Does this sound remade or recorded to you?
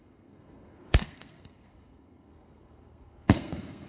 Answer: remade